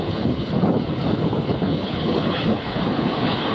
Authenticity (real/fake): fake